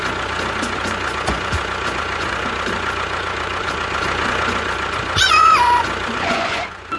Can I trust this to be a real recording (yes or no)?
no